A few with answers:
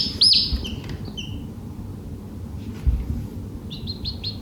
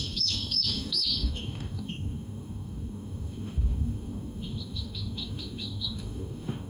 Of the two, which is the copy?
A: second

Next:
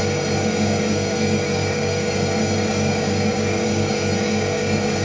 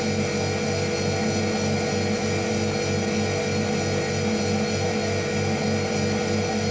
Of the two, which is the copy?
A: first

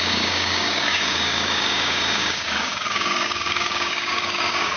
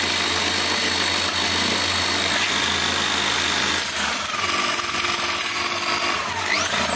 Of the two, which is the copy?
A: first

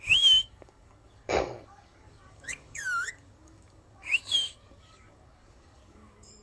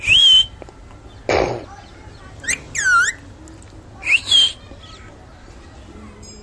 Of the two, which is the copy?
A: first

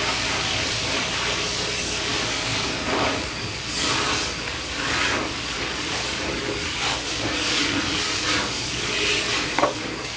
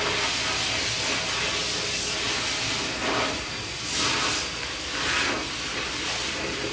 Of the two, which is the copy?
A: first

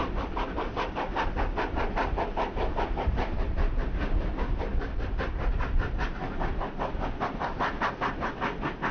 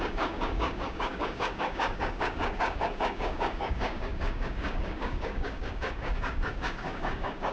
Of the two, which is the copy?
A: second